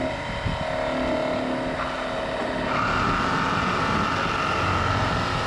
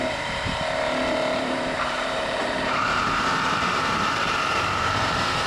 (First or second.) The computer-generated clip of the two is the second